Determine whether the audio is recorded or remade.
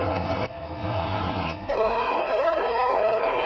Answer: remade